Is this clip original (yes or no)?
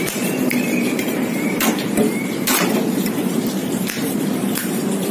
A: no